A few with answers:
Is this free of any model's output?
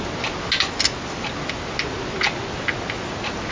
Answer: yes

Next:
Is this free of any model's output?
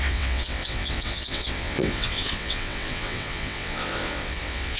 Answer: no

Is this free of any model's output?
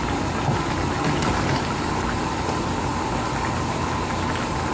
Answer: yes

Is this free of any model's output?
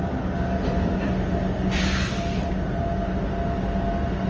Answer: yes